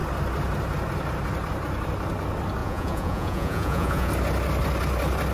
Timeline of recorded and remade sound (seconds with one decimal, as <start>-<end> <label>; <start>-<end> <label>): 0.0-2.6 recorded; 2.6-4.1 remade; 4.1-5.3 recorded